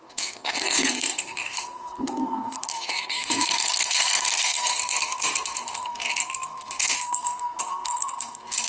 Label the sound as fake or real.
fake